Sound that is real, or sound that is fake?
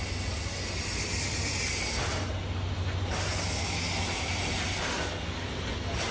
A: real